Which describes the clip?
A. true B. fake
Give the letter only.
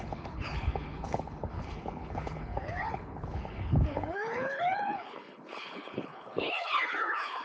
B